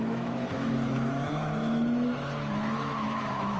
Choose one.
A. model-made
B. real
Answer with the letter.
A